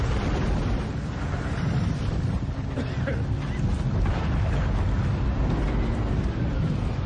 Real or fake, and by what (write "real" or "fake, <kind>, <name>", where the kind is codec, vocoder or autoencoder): fake, vocoder, BigVGAN v2